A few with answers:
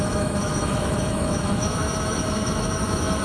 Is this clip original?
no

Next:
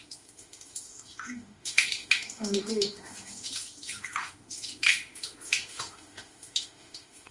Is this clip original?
no